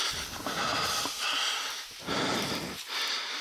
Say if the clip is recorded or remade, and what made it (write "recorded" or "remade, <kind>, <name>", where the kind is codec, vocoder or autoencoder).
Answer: recorded